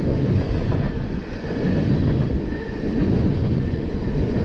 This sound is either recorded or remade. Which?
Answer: remade